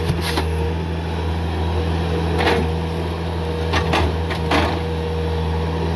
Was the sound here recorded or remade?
recorded